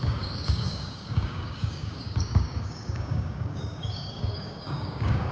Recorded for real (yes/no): no